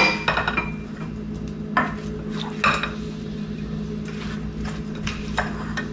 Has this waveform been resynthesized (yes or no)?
no